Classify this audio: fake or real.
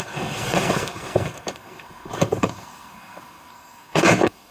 fake